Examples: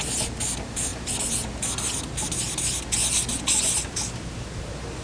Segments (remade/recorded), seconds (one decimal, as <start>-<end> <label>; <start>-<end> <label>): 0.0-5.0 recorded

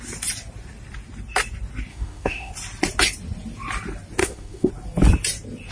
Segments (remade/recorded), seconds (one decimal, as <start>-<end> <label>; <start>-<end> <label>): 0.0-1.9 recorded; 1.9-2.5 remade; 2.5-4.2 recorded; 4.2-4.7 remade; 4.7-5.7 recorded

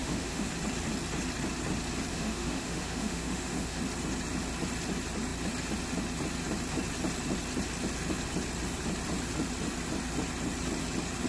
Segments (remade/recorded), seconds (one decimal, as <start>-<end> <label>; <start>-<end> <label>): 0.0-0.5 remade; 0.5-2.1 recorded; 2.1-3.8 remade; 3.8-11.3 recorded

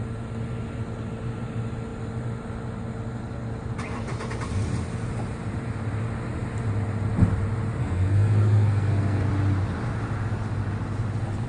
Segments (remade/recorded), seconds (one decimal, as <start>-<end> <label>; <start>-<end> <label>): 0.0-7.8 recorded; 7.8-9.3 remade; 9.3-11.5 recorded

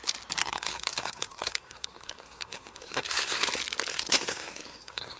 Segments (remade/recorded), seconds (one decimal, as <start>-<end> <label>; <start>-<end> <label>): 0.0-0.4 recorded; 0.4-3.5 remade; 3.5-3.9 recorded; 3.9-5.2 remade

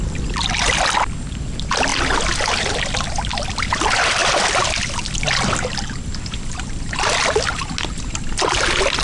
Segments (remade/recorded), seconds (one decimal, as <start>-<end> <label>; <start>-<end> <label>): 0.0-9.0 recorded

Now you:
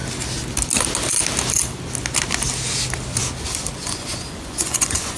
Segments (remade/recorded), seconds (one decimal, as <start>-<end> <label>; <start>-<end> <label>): 0.0-3.8 recorded; 3.8-5.2 remade